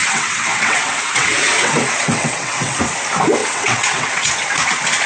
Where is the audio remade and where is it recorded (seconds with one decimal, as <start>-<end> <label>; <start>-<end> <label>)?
0.0-2.8 remade; 2.8-3.4 recorded; 3.4-4.3 remade; 4.3-5.1 recorded